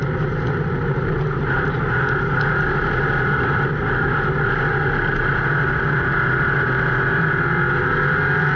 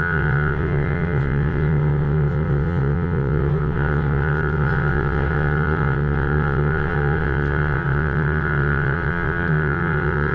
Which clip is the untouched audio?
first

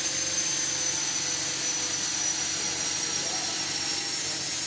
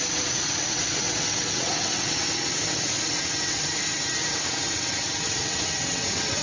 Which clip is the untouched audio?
first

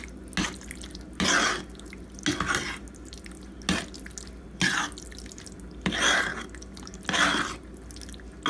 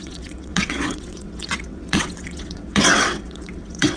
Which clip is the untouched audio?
first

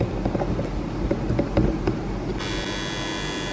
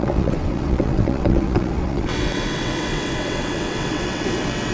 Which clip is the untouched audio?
first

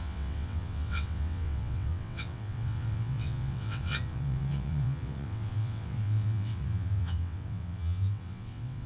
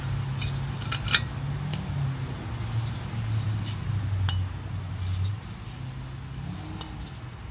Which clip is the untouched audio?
second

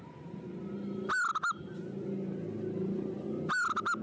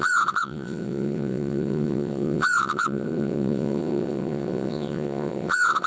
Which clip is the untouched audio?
first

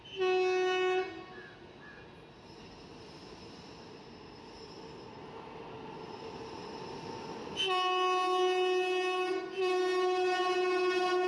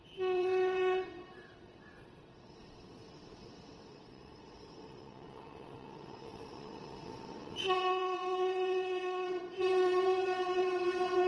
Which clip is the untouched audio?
first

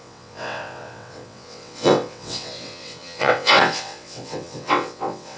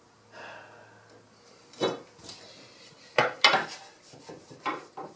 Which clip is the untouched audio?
second